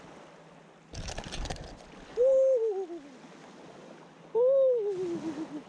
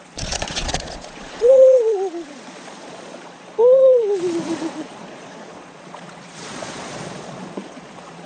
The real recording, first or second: first